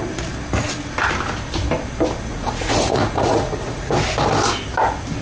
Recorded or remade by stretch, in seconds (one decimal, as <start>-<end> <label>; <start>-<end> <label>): 0.0-2.3 recorded; 2.3-3.9 remade; 3.9-5.2 recorded